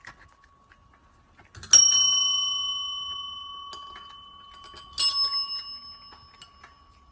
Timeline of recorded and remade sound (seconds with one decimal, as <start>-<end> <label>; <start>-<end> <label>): 0.0-7.1 recorded